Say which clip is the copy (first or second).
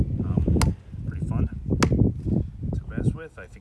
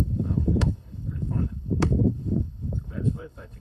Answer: second